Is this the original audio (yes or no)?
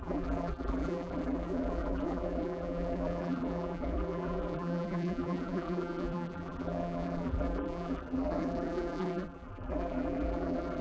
no